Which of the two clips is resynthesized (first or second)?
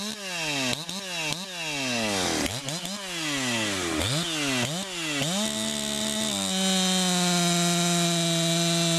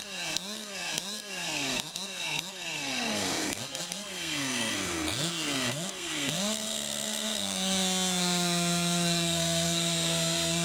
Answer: second